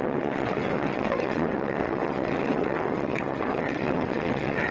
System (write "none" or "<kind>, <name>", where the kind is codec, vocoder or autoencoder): vocoder, WaveNeXt